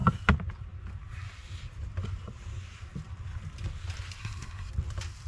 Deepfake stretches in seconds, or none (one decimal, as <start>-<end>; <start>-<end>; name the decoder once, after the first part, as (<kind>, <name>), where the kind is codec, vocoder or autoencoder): 4.2-4.7 (codec, SNAC)